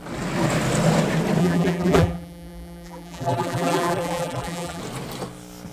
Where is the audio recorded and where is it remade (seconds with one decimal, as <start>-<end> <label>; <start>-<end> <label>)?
0.0-1.4 recorded; 1.4-4.8 remade; 4.8-5.7 recorded